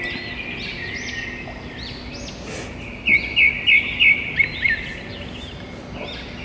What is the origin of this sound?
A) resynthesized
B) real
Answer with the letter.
B